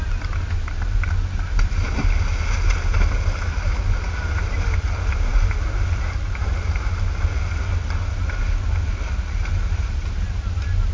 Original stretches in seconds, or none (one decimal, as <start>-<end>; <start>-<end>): 0.0-10.9